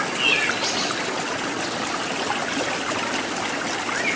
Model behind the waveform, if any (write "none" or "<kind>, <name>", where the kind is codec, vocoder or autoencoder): none